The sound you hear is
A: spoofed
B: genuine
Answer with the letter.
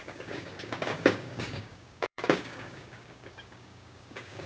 A